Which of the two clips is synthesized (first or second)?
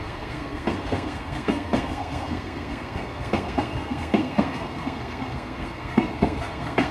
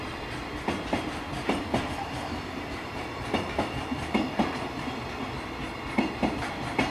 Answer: first